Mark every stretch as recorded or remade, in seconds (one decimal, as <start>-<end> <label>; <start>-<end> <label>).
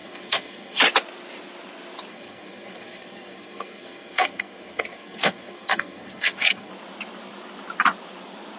0.0-0.8 remade; 0.8-2.1 recorded; 2.1-6.7 remade; 6.7-8.6 recorded